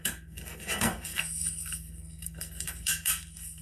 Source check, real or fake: fake